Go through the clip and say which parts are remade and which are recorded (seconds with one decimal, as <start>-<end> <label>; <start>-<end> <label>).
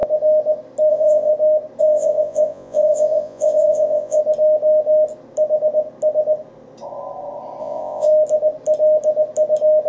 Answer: 0.0-0.9 recorded; 0.9-1.3 remade; 1.3-1.8 recorded; 1.8-4.2 remade; 4.2-7.6 recorded; 7.6-8.1 remade; 8.1-9.9 recorded